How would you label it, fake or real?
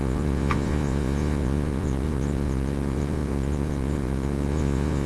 fake